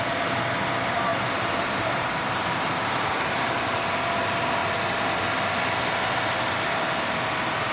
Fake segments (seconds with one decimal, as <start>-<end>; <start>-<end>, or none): 1.1-3.6